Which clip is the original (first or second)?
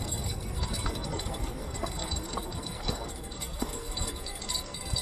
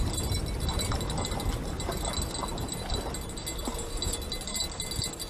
second